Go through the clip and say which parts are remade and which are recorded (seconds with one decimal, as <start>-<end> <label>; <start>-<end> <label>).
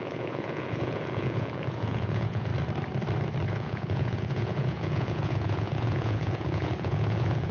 0.0-2.5 remade; 2.5-3.5 recorded; 3.5-7.5 remade